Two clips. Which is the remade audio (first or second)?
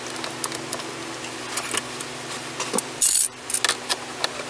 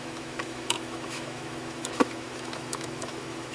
second